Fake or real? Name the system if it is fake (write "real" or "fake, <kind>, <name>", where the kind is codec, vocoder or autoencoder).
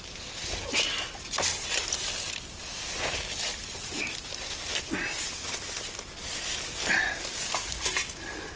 real